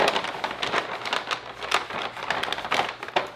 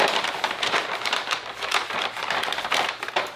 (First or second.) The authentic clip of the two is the first